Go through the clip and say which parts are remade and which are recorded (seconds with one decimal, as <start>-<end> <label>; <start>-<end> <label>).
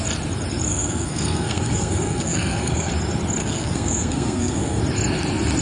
0.0-0.7 recorded; 0.7-2.9 remade; 2.9-3.4 recorded; 3.4-4.8 remade; 4.8-5.6 recorded